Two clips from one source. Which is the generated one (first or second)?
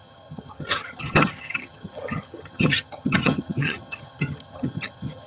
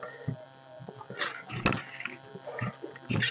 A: first